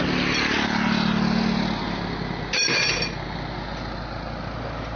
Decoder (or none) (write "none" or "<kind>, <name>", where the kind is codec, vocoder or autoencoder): none